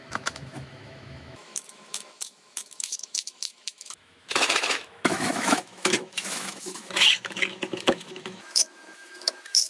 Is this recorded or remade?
remade